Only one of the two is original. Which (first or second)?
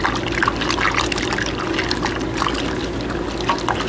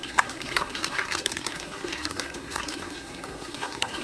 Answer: first